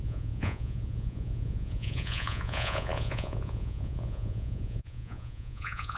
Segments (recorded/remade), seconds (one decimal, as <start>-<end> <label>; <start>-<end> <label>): 0.0-6.0 remade